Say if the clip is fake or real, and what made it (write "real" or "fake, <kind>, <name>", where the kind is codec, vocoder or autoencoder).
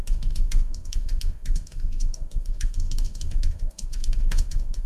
fake, autoencoder, DAC-VAE